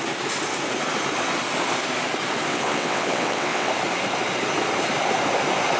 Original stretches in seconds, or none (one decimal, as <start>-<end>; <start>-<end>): 0.0-2.5; 3.7-5.8